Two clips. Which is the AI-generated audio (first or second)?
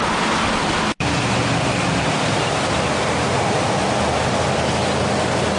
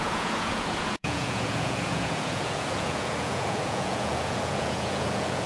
second